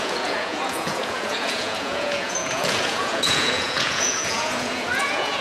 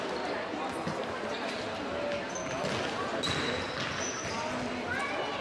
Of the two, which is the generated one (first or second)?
first